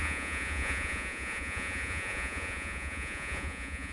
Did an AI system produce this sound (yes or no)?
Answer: yes